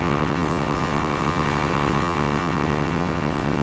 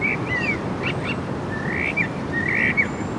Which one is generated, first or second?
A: first